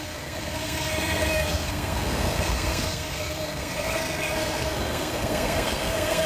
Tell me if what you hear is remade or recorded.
remade